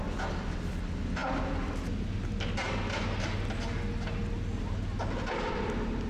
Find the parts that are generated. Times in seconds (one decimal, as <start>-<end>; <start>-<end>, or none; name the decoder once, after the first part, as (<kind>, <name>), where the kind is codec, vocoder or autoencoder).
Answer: none